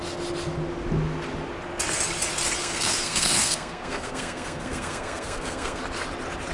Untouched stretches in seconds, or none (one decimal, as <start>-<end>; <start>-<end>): 0.0-2.6; 5.8-6.5